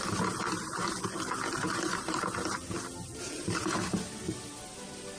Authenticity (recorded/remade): recorded